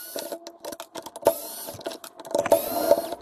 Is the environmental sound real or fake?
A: real